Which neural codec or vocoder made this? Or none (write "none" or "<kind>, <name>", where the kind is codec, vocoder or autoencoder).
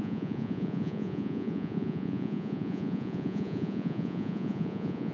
vocoder, Vocos